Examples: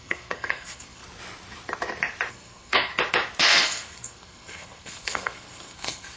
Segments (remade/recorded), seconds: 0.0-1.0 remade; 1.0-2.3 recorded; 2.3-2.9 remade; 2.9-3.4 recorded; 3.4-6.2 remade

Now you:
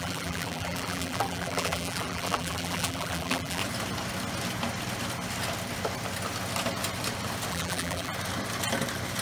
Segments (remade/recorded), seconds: 0.0-3.6 remade; 3.6-7.5 recorded; 7.5-8.1 remade; 8.1-9.2 recorded

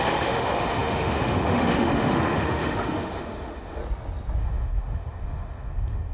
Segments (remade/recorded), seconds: 0.0-3.8 remade; 3.8-4.4 recorded; 4.4-6.1 remade